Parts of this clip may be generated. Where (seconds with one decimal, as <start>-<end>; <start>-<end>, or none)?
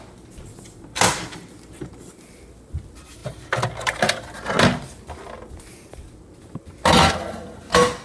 none